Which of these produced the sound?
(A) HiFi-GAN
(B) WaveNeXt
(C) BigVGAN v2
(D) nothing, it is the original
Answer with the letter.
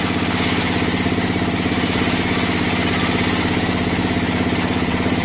D